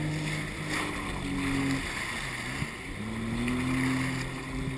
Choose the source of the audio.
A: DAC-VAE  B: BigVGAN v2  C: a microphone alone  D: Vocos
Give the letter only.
C